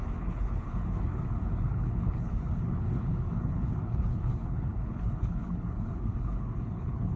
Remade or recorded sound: remade